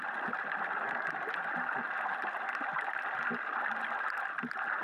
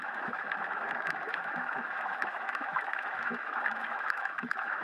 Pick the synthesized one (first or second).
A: second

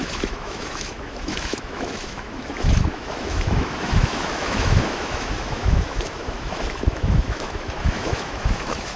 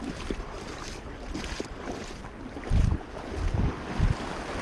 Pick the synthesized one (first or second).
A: first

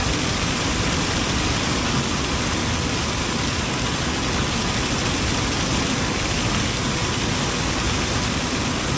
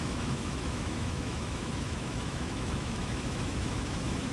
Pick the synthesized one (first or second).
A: second